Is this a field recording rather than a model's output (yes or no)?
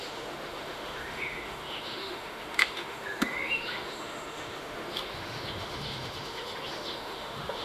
no